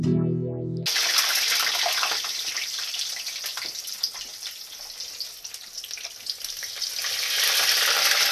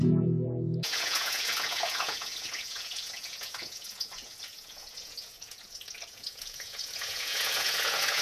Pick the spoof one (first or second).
second